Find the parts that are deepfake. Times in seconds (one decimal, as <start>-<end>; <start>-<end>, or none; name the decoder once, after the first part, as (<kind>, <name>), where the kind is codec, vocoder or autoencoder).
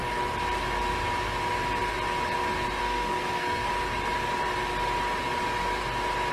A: 2.8-3.7 (codec, SNAC)